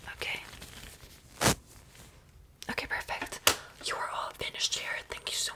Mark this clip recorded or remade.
recorded